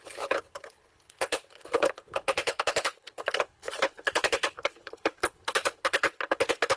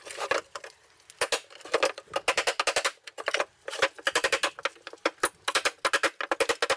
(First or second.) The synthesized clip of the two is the first